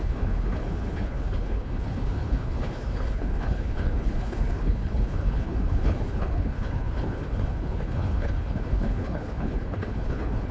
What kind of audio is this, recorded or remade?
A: remade